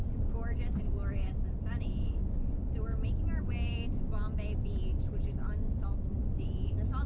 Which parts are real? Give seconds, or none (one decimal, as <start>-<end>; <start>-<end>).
0.0-7.1